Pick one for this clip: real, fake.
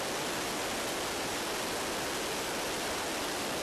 real